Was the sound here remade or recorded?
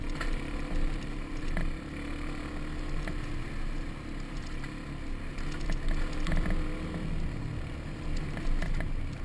recorded